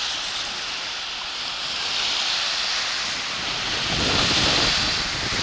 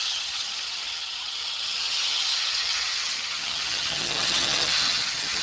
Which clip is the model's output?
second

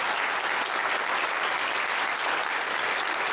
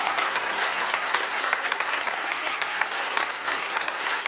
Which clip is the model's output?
second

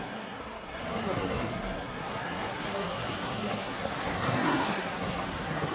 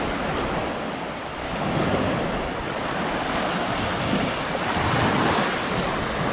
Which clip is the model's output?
first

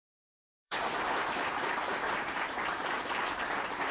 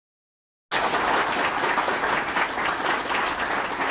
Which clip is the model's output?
first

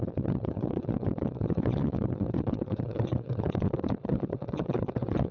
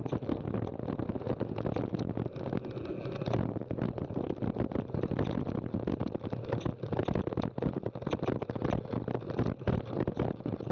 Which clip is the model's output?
first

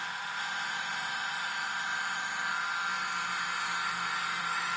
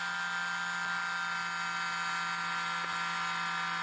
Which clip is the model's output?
first